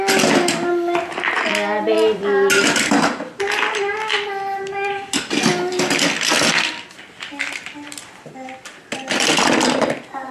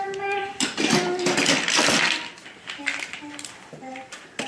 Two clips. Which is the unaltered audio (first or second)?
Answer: first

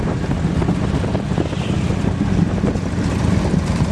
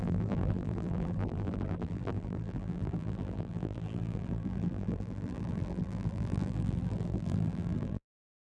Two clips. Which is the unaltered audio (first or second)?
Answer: first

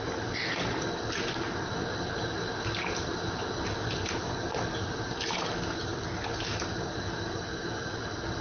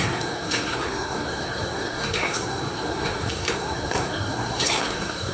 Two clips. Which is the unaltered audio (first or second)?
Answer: first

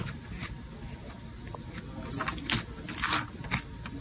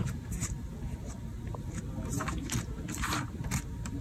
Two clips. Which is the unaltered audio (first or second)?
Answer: first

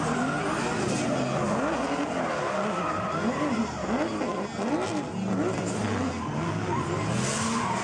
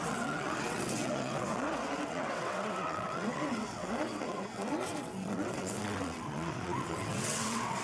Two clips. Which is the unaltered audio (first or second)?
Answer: first